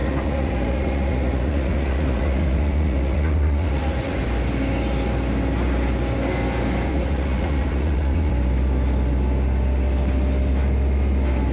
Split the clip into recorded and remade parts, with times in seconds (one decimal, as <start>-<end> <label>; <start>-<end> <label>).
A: 0.0-4.2 remade; 4.2-6.9 recorded; 6.9-8.3 remade; 8.3-11.5 recorded